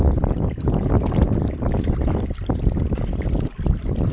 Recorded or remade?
recorded